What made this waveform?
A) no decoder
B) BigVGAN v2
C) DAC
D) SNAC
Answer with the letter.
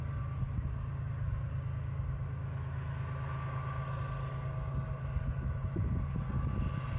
A